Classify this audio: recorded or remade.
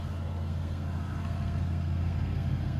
remade